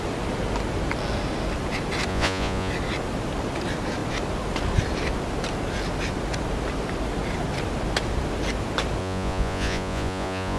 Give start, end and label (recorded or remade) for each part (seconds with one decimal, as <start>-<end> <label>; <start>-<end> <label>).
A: 0.0-2.1 recorded; 2.1-2.7 remade; 2.7-9.0 recorded; 9.0-10.6 remade